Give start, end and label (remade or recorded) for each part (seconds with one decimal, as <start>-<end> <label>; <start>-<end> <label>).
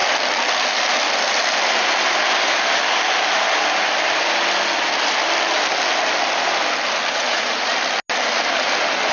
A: 0.0-7.1 recorded; 7.1-7.7 remade; 7.7-9.1 recorded